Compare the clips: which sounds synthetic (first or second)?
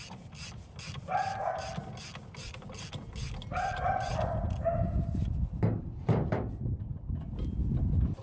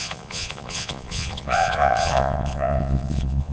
second